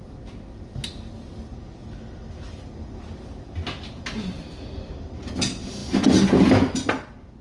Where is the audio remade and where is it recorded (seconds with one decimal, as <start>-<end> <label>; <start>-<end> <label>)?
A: 0.0-7.4 recorded